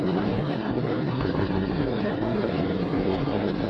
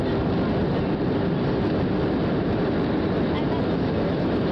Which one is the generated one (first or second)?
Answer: first